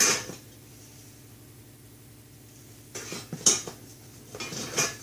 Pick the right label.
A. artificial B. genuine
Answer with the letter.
B